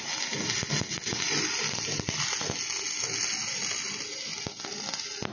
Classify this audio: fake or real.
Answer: real